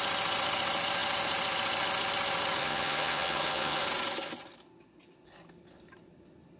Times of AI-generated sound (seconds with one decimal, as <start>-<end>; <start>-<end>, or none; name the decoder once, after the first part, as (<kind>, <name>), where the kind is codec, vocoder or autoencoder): 2.6-3.8 (vocoder, HiFi-GAN)